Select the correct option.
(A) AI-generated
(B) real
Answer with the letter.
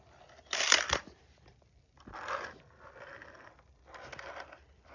B